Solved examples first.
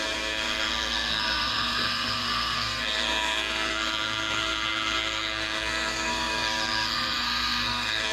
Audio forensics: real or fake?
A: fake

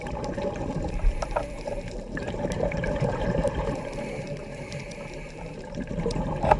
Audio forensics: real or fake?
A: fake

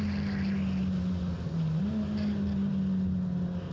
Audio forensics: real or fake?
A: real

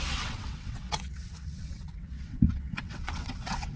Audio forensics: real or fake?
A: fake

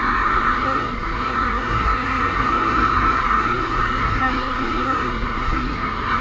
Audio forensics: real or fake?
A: fake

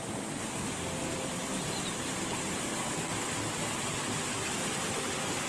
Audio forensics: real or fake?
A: real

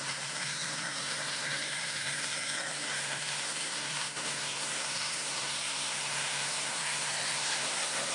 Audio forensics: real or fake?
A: fake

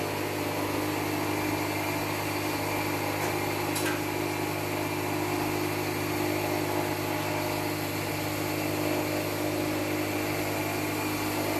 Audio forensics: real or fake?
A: real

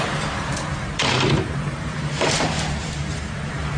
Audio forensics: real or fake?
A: fake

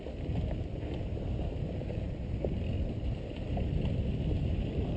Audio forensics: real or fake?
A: real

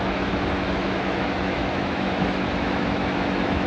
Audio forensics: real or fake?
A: fake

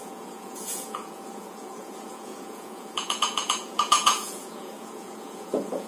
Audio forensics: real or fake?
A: fake